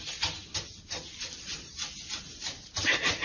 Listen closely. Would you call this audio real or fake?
real